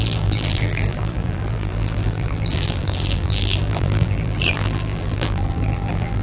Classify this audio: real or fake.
fake